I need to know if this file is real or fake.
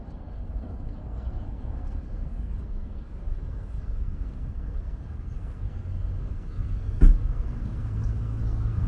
fake